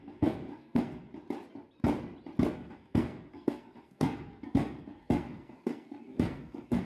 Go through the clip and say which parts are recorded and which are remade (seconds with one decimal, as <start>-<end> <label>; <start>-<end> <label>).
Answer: 0.0-1.1 remade; 1.1-2.5 recorded; 2.5-6.8 remade